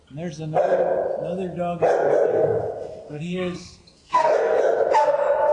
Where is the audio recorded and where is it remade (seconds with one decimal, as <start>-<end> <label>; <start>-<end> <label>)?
0.0-2.3 recorded; 2.3-4.6 remade; 4.6-5.5 recorded